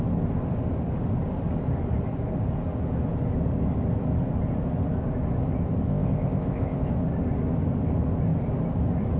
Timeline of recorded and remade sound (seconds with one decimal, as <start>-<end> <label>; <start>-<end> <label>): 0.0-5.9 recorded; 5.9-6.9 remade; 6.9-9.2 recorded